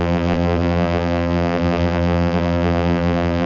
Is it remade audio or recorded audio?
remade